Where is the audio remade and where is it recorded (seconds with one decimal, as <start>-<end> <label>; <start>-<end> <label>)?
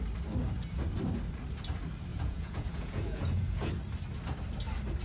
0.0-2.1 recorded; 2.1-3.7 remade; 3.7-5.0 recorded